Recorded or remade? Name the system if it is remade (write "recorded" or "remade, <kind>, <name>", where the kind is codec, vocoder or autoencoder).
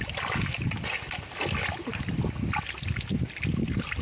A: recorded